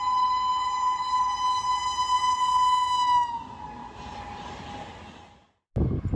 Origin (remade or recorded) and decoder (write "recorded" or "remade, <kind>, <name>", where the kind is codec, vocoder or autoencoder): recorded